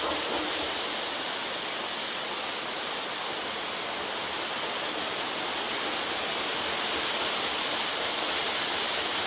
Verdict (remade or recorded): recorded